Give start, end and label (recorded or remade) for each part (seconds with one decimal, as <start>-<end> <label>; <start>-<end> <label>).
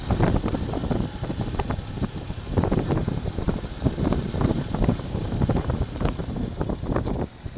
0.0-7.6 remade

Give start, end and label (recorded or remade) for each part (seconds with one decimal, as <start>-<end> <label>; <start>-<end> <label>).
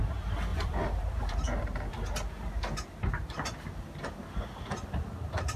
0.0-0.5 recorded; 0.5-1.9 remade; 1.9-5.6 recorded